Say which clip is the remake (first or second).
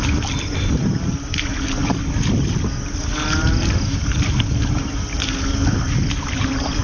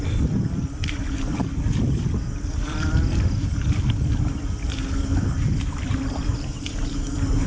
second